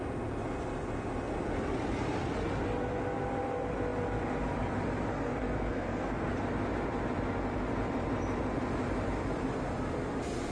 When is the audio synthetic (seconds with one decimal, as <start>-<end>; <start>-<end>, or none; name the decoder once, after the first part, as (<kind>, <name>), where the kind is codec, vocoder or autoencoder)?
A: 5.1-6.3 (codec, SNAC)